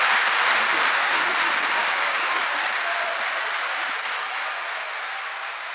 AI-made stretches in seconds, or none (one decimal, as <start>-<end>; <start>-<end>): 0.7-1.3; 1.8-2.4